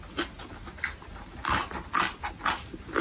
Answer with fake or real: real